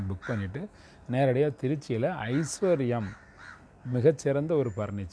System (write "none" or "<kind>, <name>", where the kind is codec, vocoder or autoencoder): none